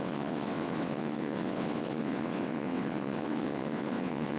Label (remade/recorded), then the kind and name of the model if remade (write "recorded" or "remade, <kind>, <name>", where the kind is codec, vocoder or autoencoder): remade, vocoder, WaveNeXt